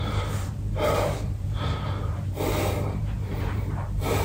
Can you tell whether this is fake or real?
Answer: fake